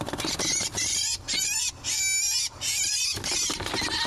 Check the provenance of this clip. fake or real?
real